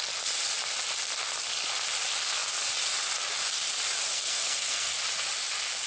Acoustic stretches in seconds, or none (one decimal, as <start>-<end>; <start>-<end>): 0.0-4.1; 5.0-5.9